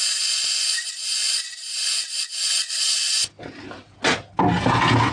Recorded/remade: recorded